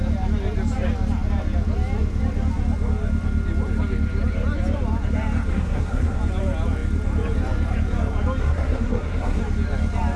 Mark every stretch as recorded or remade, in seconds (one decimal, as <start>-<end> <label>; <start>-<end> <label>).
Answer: 0.0-5.5 recorded; 5.5-6.2 remade; 6.2-8.4 recorded; 8.4-9.4 remade; 9.4-10.2 recorded